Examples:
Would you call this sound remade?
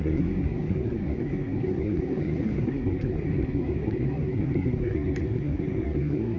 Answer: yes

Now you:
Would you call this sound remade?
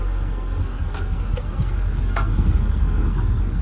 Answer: yes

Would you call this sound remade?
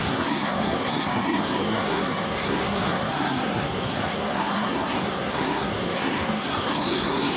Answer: yes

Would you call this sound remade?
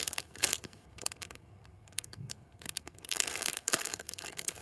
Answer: yes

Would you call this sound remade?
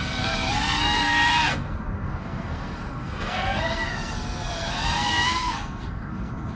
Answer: yes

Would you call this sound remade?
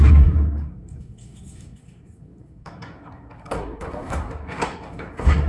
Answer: yes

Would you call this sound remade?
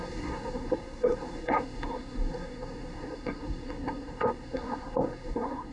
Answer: yes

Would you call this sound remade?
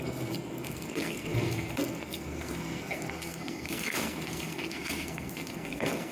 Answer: yes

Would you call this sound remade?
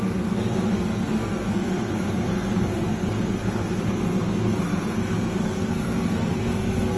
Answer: yes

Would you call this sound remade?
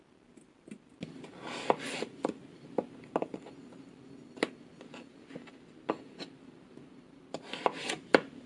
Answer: no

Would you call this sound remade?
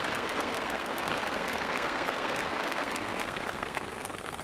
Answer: yes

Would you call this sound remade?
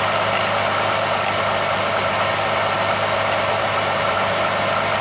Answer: no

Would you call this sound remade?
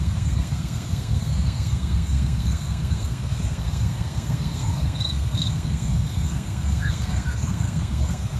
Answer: yes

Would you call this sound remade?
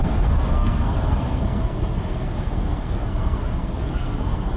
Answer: yes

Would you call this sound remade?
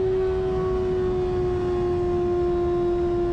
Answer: no